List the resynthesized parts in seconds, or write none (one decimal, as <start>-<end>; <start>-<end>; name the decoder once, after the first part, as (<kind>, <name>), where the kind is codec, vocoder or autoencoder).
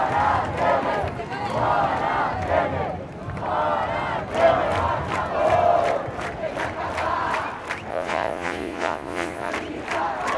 7.9-9.5 (vocoder, Vocos)